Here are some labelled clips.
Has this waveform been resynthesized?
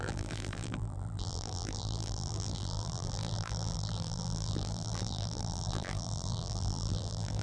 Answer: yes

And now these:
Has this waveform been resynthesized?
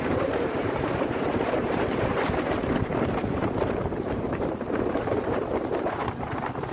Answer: yes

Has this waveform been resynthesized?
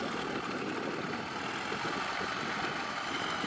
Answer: no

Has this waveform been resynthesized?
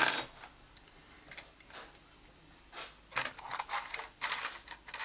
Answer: no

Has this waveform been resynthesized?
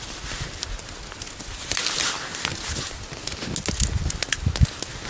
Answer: no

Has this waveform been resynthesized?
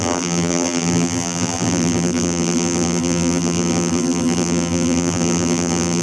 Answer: yes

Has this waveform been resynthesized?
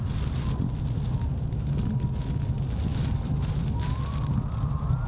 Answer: no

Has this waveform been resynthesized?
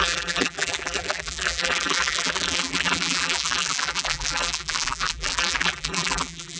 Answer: yes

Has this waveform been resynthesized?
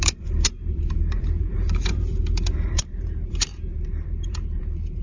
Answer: yes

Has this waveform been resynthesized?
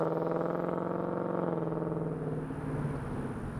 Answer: no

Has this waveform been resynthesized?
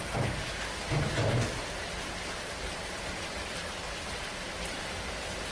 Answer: no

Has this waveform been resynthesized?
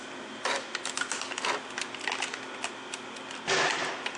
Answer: no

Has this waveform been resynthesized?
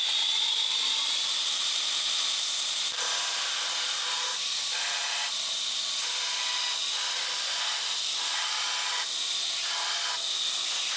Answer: yes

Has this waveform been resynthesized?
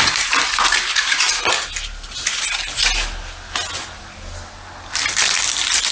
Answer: no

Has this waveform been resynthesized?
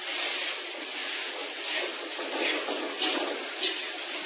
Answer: no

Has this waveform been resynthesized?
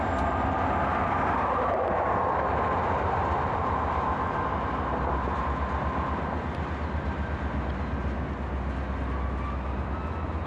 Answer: no